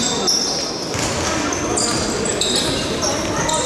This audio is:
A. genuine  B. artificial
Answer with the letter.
A